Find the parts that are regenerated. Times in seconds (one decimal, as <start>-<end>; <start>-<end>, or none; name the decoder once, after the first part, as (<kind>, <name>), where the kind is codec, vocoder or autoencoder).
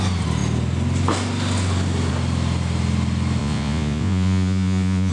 3.4-5.1 (vocoder, Vocos)